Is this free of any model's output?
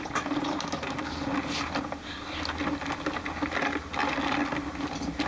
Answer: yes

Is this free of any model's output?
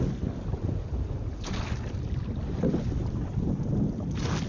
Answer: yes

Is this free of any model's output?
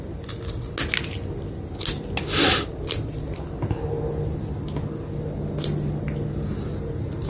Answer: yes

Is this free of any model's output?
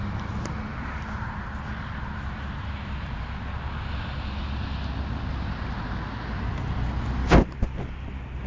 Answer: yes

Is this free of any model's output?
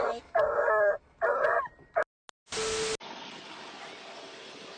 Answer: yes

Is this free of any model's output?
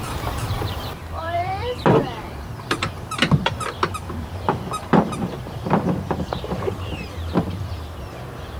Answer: no